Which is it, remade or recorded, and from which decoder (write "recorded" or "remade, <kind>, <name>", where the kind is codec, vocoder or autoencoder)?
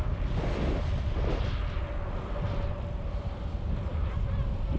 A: recorded